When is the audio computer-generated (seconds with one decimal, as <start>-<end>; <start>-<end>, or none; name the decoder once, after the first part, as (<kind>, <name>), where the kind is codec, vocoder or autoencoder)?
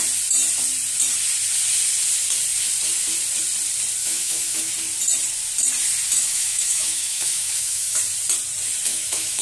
4.0-4.7 (autoencoder, DAC-VAE); 6.1-8.0; 8.9-9.4